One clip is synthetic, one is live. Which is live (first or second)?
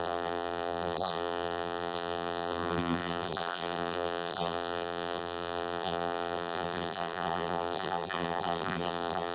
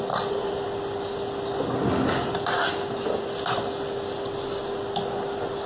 second